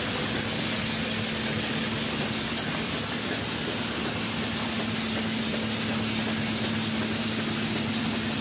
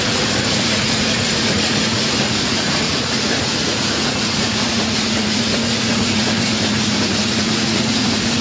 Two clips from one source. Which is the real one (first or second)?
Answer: first